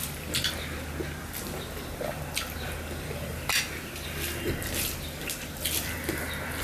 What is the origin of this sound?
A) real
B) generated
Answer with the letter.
A